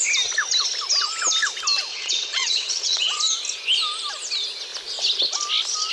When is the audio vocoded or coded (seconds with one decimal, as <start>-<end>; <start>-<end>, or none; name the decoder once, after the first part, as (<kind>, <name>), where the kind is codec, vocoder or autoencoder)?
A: 1.9-3.2 (vocoder, WaveNeXt)